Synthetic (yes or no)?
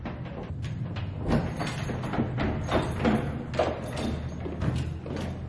no